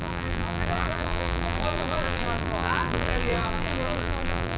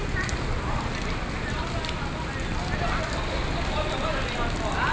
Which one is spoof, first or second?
first